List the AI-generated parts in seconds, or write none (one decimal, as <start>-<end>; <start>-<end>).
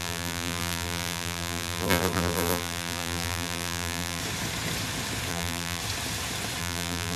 0.0-4.2; 5.3-5.8; 6.6-7.2